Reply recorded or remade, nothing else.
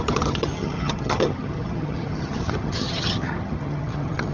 remade